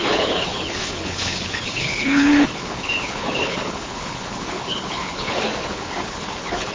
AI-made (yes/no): yes